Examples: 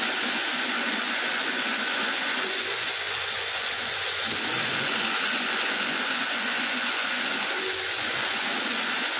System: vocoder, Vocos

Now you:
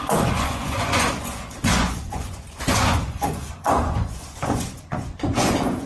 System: vocoder, Vocos